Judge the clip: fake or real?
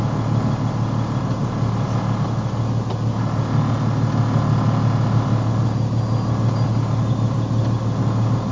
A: real